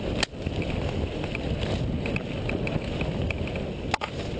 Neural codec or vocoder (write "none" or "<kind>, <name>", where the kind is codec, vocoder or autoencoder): none